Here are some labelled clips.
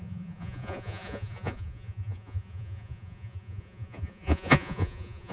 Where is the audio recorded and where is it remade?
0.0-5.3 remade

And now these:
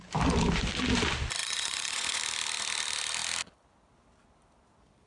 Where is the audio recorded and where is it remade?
0.0-1.4 recorded; 1.4-2.2 remade; 2.2-5.1 recorded

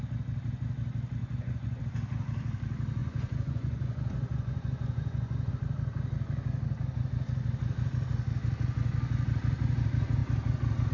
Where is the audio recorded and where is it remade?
0.0-1.2 recorded; 1.2-1.8 remade; 1.8-3.0 recorded; 3.0-5.5 remade; 5.5-10.9 recorded

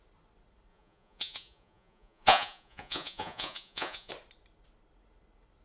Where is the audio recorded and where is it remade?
0.0-0.7 recorded; 0.7-4.1 remade; 4.1-5.6 recorded

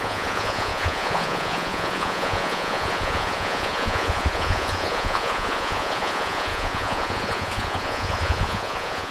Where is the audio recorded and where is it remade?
0.0-9.1 remade

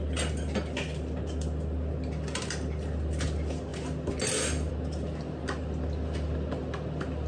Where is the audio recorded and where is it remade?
0.0-7.3 recorded

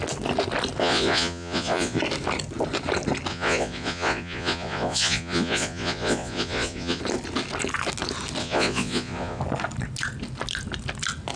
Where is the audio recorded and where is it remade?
0.0-0.8 recorded; 0.8-2.0 remade; 2.0-3.3 recorded; 3.3-7.0 remade; 7.0-8.4 recorded; 8.4-9.4 remade; 9.4-11.4 recorded